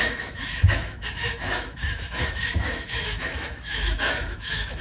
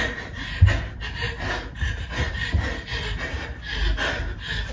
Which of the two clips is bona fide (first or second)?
second